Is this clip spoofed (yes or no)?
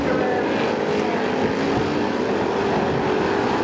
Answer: no